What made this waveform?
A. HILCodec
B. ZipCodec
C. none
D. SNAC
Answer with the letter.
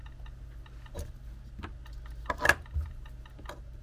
C